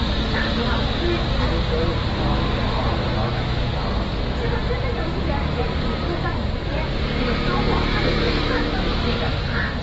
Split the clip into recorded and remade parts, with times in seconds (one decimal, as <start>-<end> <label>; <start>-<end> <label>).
0.0-3.2 recorded; 3.2-3.7 remade; 3.7-7.8 recorded; 7.8-9.0 remade; 9.0-9.8 recorded